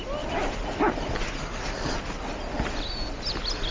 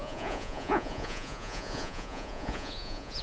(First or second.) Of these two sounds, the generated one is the second